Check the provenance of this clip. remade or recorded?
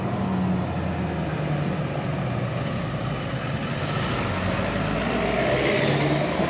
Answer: recorded